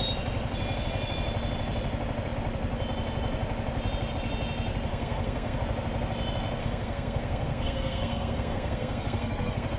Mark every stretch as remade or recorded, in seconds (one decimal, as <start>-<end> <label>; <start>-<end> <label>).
0.0-4.9 recorded; 4.9-5.6 remade; 5.6-6.6 recorded; 6.6-9.8 remade